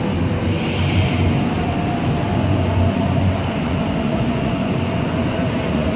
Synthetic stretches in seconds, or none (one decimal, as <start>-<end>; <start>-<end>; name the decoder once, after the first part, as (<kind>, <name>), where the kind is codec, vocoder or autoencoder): 2.3-6.0 (vocoder, Vocos)